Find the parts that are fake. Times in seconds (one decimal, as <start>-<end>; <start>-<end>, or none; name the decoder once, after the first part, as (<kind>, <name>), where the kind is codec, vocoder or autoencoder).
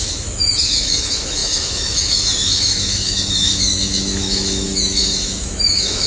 0.0-6.1 (autoencoder, DAC-VAE)